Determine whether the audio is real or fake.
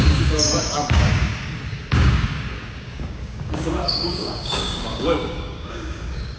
fake